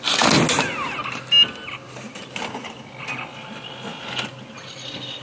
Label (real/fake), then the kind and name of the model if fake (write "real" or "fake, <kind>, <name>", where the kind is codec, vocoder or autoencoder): real